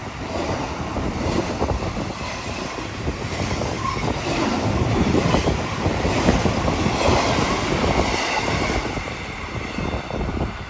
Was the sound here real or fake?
real